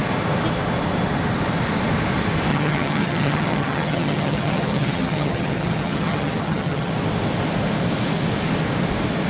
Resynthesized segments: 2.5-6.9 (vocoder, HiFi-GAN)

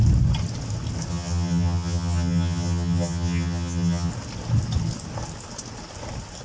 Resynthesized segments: 1.1-4.1 (vocoder, HiFi-GAN)

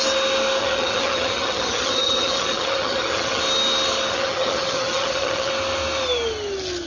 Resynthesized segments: 0.6-3.4 (vocoder, HiFi-GAN); 4.1-5.5

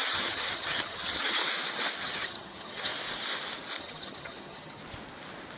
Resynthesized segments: 0.0-1.4 (vocoder, HiFi-GAN); 2.0-2.9; 3.8-4.8